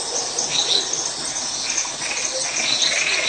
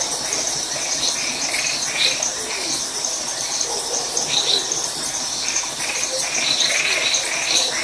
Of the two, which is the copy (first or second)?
second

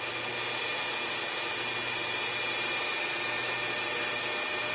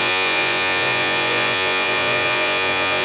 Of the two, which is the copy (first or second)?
second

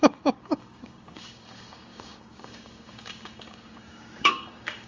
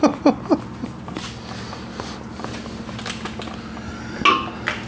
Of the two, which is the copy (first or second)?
first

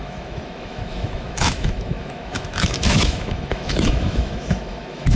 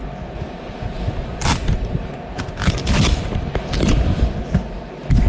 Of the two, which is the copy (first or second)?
first